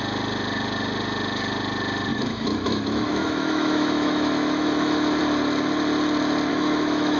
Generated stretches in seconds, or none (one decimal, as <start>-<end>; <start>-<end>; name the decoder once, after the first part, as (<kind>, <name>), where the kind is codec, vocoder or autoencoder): 2.1-5.2 (autoencoder, DAC-VAE); 6.5-7.2